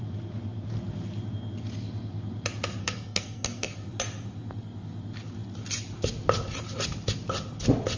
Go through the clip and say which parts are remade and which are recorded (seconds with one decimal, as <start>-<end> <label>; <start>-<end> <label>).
0.0-2.8 recorded; 2.8-3.9 remade; 3.9-8.0 recorded

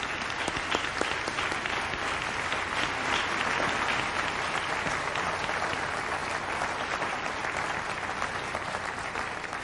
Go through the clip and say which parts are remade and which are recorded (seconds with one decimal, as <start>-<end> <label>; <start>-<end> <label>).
0.0-9.6 recorded